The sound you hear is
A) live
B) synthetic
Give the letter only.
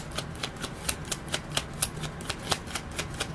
A